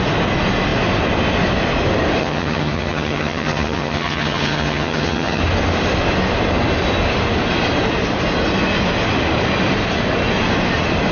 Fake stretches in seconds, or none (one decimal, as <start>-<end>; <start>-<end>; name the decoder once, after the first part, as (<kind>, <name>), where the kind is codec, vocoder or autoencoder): 2.2-5.4 (vocoder, HiFi-GAN)